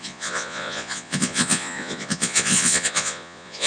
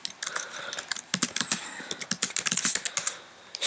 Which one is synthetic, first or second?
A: first